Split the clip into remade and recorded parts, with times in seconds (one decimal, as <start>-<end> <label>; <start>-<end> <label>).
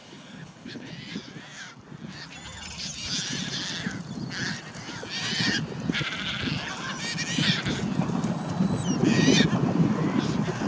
0.0-0.9 remade; 0.9-10.7 recorded